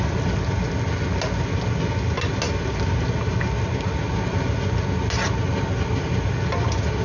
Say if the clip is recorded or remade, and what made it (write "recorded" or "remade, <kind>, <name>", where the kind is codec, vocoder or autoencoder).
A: recorded